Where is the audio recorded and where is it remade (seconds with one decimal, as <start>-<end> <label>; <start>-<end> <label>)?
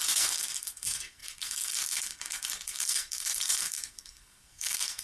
0.0-5.0 remade